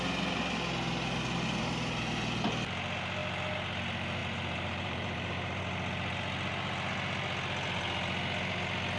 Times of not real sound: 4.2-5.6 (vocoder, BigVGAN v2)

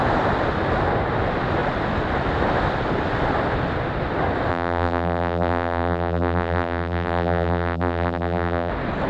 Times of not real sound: 4.5-8.7 (vocoder, BigVGAN v2)

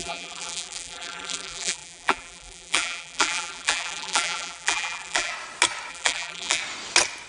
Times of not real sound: 0.0-5.3 (vocoder, BigVGAN v2); 5.9-6.6

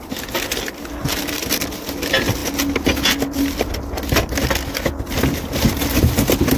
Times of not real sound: none

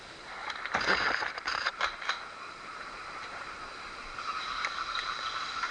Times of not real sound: 0.0-5.7 (vocoder, BigVGAN v2)

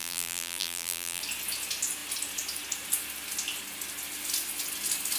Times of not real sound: 0.0-1.2 (vocoder, BigVGAN v2)

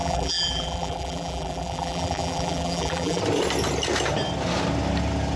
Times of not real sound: 0.0-3.2 (vocoder, BigVGAN v2)